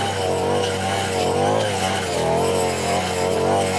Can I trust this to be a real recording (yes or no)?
yes